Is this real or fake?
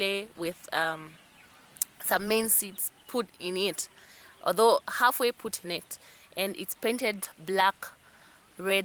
fake